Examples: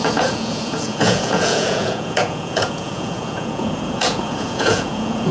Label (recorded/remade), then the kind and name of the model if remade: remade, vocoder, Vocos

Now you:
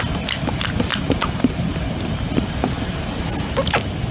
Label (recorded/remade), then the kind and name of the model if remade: recorded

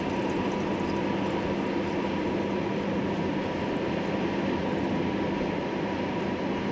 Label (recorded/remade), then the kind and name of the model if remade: recorded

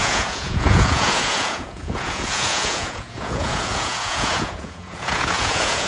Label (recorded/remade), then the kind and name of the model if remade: remade, vocoder, Vocos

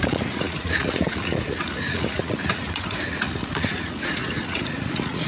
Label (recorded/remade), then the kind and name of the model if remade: remade, vocoder, Vocos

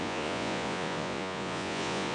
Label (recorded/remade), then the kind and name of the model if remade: remade, vocoder, Vocos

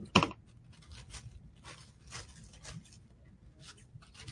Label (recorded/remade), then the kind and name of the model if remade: recorded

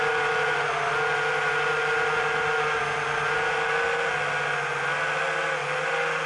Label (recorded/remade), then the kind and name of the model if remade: recorded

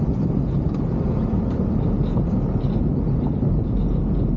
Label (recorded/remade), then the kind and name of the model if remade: recorded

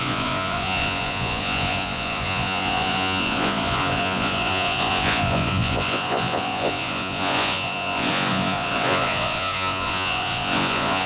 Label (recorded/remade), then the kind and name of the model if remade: remade, vocoder, Vocos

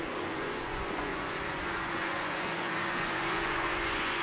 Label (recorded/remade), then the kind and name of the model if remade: remade, vocoder, Vocos